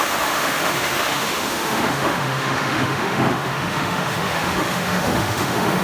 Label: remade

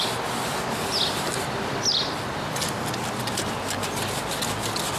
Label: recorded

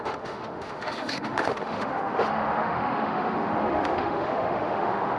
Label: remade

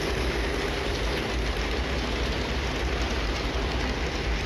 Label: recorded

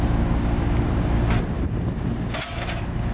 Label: recorded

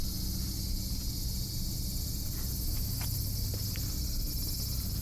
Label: recorded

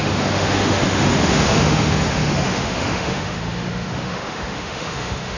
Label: remade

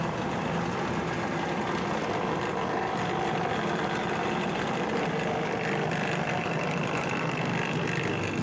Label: recorded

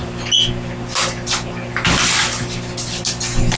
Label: recorded